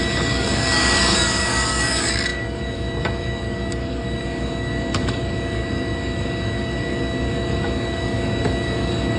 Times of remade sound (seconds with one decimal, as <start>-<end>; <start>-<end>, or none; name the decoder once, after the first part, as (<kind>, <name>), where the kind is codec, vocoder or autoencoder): 0.0-9.2 (codec, DAC)

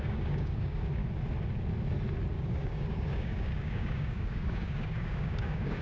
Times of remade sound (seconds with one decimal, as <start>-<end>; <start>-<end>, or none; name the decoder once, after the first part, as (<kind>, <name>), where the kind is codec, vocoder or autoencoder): 0.0-1.0 (codec, DAC); 2.3-5.8